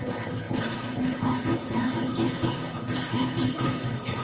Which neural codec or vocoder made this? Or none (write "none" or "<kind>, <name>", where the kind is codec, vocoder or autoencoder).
codec, HILCodec